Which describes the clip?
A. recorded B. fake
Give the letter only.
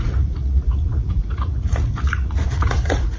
B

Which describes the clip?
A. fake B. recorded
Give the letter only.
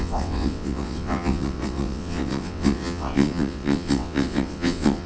A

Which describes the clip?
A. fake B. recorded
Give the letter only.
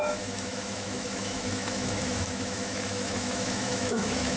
A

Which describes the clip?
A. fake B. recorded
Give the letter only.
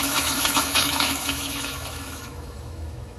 A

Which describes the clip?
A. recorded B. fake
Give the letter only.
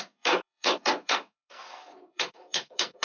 B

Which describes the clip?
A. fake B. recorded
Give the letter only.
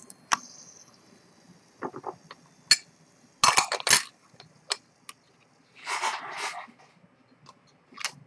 B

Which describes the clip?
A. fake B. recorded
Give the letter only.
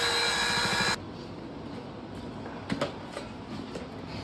B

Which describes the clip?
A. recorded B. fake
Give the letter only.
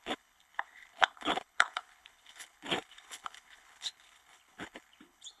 B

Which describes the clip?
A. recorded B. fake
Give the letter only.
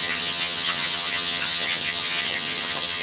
B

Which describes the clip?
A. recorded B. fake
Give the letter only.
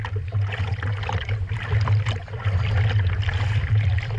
A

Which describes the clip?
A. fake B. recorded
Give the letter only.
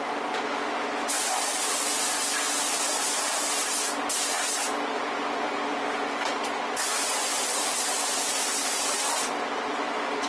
B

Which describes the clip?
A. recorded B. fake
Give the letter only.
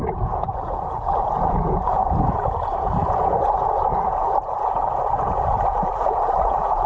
B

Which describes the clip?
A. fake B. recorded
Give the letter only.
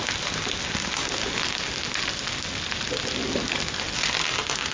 B